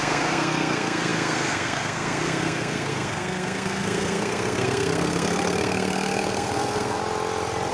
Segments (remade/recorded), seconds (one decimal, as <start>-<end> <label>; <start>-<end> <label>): 0.0-7.0 remade; 7.0-7.7 recorded